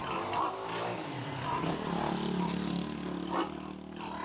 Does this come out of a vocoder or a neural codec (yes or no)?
no